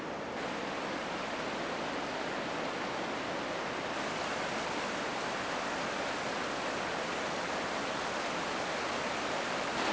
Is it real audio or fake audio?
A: real